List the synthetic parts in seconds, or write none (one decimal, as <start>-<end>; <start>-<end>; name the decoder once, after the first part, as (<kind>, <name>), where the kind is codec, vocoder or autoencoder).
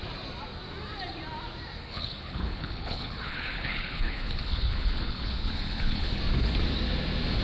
1.8-6.2 (codec, HILCodec)